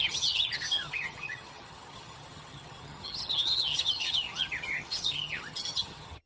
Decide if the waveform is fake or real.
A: fake